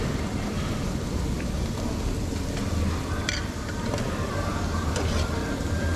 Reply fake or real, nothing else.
fake